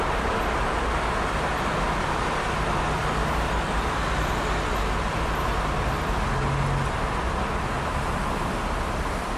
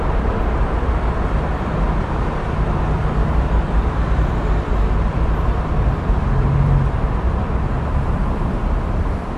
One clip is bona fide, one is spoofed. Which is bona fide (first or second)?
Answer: first